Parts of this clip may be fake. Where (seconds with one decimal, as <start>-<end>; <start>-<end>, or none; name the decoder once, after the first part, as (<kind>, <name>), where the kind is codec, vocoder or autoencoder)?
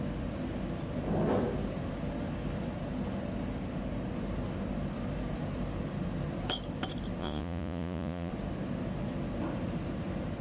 7.2-8.3 (vocoder, Vocos)